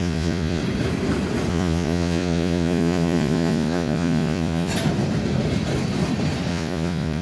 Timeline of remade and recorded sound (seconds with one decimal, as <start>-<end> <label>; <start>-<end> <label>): 0.0-0.6 remade; 0.6-1.5 recorded; 1.5-4.7 remade; 4.7-6.5 recorded; 6.5-7.2 remade